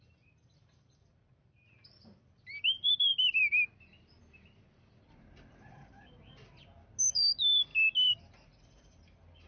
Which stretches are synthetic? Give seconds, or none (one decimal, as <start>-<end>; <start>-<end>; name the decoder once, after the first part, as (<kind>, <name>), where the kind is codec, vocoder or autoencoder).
0.0-3.1 (vocoder, BigVGAN v2); 7.0-7.7; 8.2-9.5